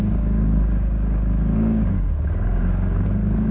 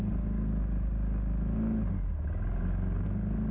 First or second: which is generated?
first